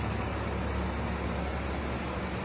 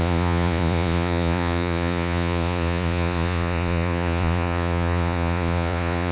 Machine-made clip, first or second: second